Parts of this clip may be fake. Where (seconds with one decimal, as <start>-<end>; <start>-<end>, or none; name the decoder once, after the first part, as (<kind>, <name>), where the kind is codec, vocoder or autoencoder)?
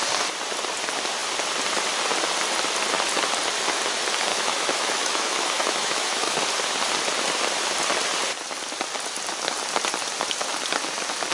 4.3-6.4 (autoencoder, DAC-VAE)